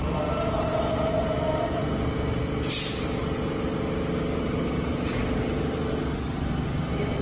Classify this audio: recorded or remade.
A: recorded